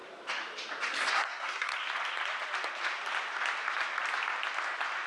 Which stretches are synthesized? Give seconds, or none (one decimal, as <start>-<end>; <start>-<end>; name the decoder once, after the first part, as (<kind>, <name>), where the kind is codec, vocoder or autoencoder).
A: 1.1-1.7 (codec, SNAC)